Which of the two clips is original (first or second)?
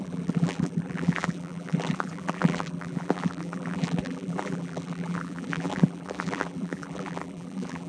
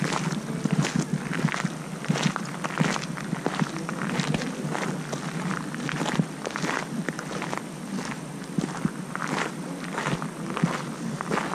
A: second